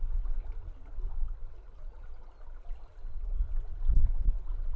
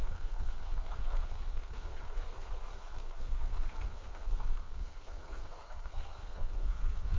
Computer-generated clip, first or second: second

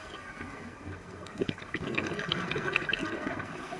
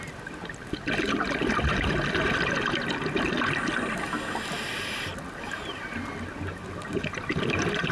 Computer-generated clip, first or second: first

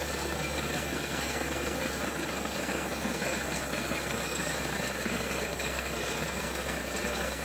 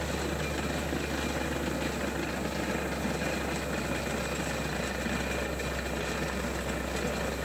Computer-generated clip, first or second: first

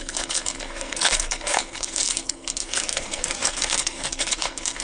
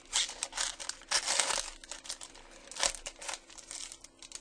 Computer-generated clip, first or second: first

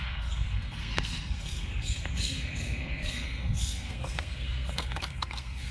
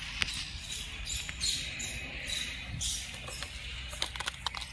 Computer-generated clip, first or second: first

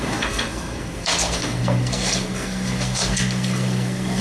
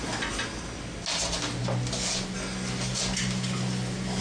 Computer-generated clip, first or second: first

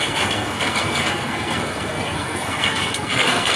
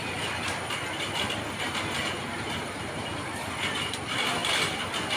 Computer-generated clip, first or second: first